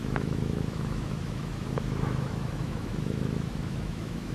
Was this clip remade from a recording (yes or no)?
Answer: yes